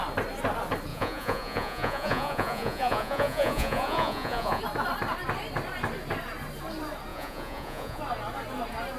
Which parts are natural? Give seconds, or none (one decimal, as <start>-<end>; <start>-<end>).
0.0-0.9; 4.6-7.1; 8.0-9.0